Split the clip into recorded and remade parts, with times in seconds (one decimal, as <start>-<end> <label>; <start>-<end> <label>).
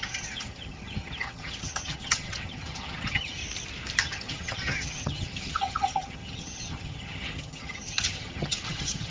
0.0-3.4 remade; 3.4-4.0 recorded; 4.0-9.1 remade